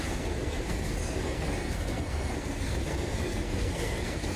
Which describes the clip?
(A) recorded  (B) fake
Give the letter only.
B